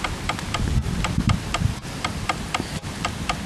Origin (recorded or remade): recorded